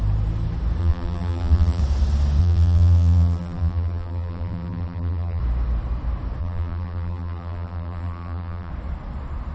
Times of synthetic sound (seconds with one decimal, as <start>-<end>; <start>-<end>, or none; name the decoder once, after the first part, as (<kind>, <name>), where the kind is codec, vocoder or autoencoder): 0.8-1.8 (vocoder, BigVGAN v2); 2.4-5.4; 6.4-8.7